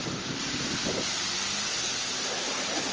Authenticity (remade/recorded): recorded